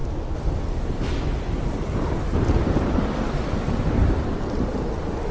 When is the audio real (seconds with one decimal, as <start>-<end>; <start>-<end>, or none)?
0.0-5.3